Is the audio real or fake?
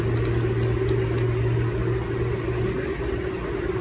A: real